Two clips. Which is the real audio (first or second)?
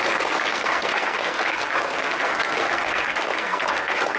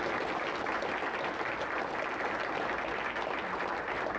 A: second